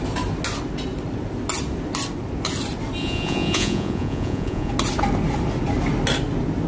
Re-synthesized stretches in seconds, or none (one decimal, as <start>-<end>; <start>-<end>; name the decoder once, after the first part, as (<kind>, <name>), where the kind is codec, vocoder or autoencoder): 3.0-4.7 (vocoder, Vocos)